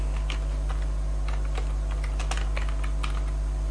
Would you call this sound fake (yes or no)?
no